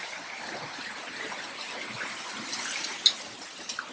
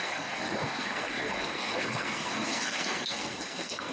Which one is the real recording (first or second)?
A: first